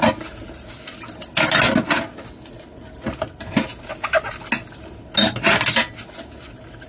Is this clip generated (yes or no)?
no